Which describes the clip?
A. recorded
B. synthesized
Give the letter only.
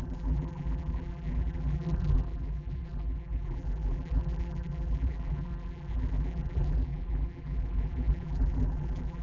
B